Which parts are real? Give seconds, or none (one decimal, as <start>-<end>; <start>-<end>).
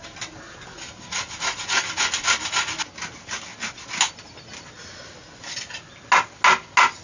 0.0-7.0